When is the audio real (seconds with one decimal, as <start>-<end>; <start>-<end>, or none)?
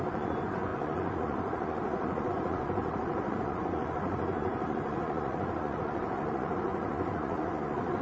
none